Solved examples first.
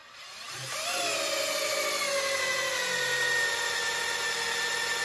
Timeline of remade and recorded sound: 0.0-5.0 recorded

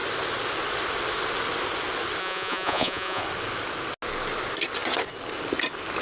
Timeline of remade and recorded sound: 0.0-2.2 recorded; 2.2-3.2 remade; 3.2-6.0 recorded

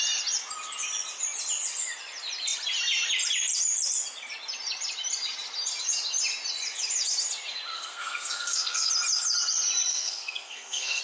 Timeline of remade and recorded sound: 0.0-7.7 recorded; 7.7-8.9 remade; 8.9-9.9 recorded; 9.9-11.0 remade

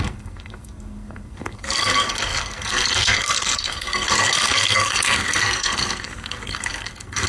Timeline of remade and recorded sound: 0.0-7.3 remade

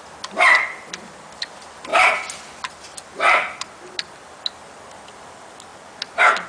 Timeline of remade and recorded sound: 0.0-6.5 recorded

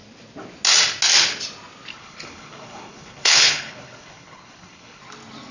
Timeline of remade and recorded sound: 0.0-1.9 recorded; 1.9-5.0 remade; 5.0-5.5 recorded